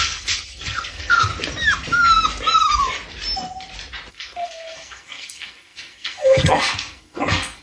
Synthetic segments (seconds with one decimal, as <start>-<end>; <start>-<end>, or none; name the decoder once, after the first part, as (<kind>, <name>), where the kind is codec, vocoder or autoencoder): 0.0-1.3 (codec, SNAC); 4.1-7.6